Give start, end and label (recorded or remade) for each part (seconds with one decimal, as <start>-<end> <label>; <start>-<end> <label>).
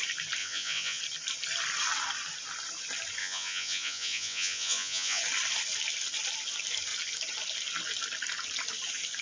0.0-0.4 recorded; 0.4-1.0 remade; 1.0-3.2 recorded; 3.2-5.2 remade; 5.2-9.2 recorded